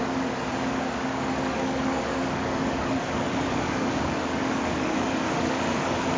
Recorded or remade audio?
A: remade